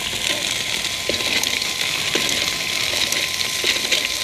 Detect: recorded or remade recorded